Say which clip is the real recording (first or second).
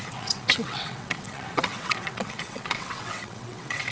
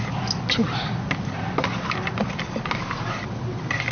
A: second